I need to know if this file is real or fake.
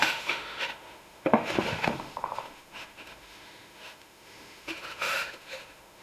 fake